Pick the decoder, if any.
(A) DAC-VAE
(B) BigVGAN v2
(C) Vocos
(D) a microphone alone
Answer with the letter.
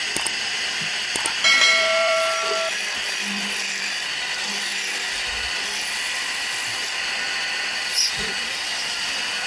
B